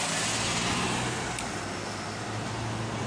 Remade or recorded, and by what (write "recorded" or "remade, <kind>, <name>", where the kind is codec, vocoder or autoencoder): recorded